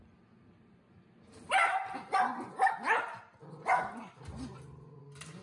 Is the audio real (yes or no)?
yes